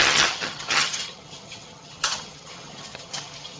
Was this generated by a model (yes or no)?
yes